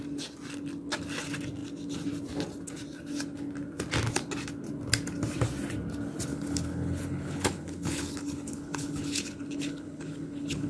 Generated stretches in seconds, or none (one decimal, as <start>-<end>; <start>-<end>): 6.3-10.7